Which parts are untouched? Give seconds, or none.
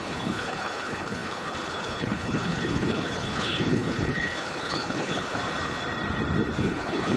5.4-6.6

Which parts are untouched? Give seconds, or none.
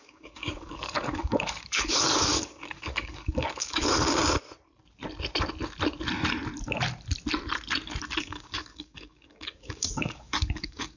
4.2-8.2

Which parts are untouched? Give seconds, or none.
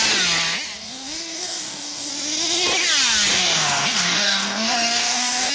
0.0-0.8; 2.1-3.3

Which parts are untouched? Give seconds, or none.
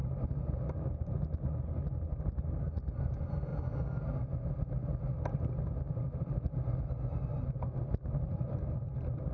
0.0-3.0; 3.5-8.1